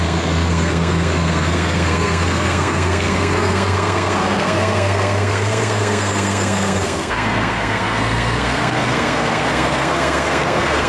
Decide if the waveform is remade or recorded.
remade